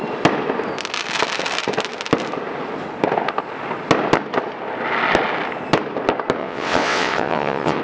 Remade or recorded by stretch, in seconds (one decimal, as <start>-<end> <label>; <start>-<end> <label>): 0.0-6.4 recorded; 6.4-7.8 remade